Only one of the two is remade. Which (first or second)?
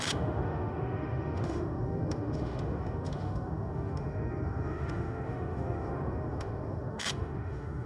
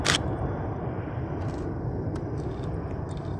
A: first